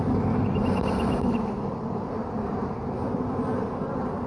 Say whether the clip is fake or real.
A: fake